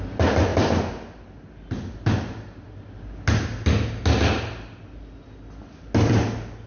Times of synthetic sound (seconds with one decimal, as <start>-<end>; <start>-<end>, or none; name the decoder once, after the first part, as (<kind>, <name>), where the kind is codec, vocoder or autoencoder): none